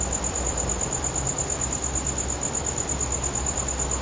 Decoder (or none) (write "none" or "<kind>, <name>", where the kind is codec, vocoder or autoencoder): none